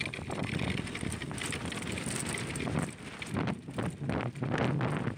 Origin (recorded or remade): recorded